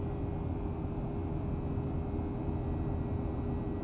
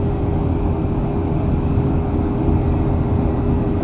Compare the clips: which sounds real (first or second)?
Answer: first